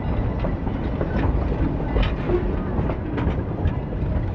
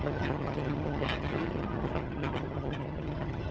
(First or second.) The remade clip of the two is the second